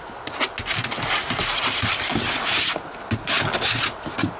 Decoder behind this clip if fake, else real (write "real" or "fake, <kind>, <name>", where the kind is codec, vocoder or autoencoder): real